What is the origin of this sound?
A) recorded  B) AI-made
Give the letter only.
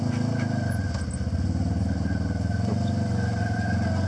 A